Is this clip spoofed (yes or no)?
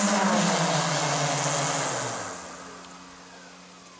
no